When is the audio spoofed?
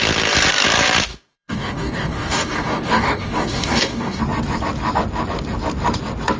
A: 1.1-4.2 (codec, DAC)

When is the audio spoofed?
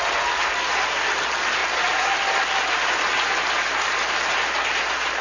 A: none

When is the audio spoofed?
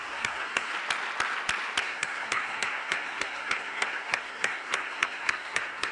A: 0.0-0.7 (codec, SNAC); 1.8-5.9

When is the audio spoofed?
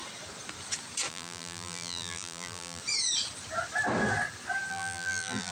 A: 1.1-2.8 (vocoder, BigVGAN v2); 4.7-5.5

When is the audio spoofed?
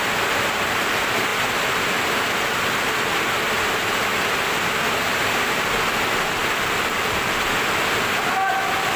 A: 4.1-4.8 (vocoder, BigVGAN v2); 6.4-7.5